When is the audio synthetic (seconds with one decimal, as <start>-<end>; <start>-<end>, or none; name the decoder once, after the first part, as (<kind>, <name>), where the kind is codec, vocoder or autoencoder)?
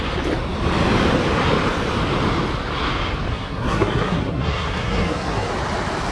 3.3-5.5 (codec, SNAC)